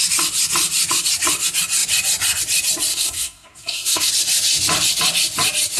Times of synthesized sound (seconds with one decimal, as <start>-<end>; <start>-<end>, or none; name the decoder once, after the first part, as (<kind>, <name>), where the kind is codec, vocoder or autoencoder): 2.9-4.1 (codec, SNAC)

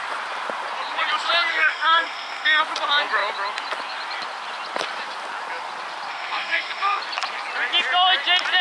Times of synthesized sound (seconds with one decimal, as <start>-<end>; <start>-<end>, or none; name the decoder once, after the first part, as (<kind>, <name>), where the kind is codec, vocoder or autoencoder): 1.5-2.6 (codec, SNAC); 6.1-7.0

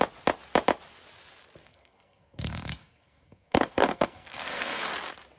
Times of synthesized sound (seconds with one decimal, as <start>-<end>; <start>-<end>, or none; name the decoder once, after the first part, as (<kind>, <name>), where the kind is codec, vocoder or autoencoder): 1.6-4.8 (codec, SNAC)